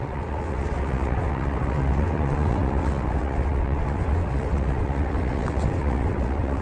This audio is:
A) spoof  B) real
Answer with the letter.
A